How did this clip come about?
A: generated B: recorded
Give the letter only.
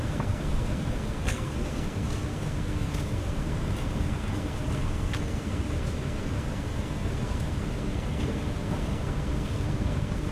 A